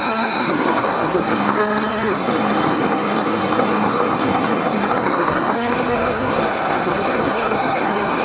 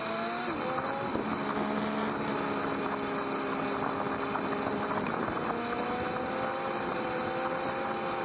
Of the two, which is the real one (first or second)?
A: second